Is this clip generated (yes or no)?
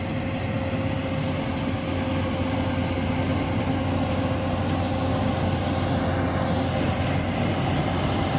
no